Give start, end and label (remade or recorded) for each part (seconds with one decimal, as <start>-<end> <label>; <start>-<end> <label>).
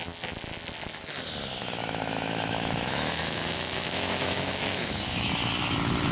0.0-1.6 recorded; 1.6-5.3 remade; 5.3-6.1 recorded